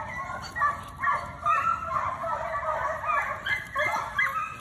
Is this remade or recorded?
recorded